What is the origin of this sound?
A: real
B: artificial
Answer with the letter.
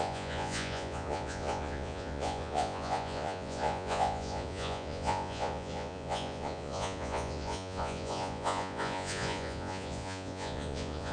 B